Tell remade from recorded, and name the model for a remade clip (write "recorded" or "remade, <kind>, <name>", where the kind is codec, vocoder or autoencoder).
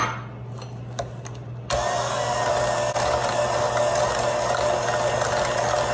recorded